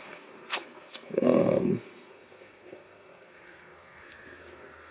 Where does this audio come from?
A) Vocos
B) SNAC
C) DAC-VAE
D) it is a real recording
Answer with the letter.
B